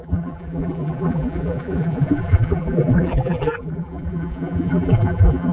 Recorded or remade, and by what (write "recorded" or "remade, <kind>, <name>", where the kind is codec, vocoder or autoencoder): remade, vocoder, BigVGAN v2